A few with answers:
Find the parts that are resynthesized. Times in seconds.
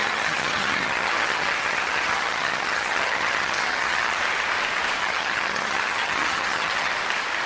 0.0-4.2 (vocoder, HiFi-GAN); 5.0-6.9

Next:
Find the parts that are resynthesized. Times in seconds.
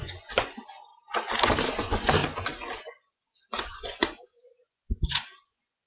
0.0-0.9 (vocoder, Vocos); 1.7-2.2; 2.8-5.9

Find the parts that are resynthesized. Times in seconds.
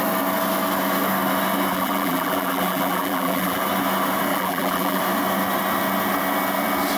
1.7-3.6 (vocoder, BigVGAN v2); 4.3-5.0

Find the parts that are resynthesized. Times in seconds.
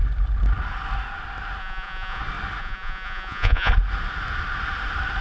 1.6-2.2 (vocoder, Vocos); 2.6-3.7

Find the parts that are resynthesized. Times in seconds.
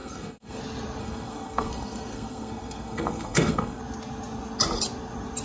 0.0-0.6 (codec, SNAC); 1.0-3.8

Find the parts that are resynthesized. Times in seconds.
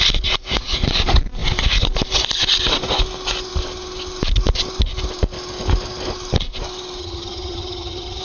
7.0-8.2 (vocoder, HiFi-GAN)